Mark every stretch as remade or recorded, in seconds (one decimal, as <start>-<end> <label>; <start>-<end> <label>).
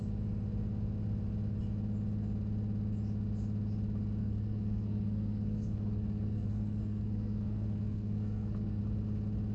0.0-4.2 recorded; 4.2-8.8 remade; 8.8-9.5 recorded